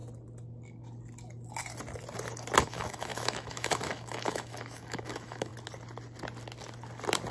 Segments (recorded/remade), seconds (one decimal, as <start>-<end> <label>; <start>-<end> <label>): 0.0-2.6 recorded; 2.6-5.5 remade; 5.5-7.3 recorded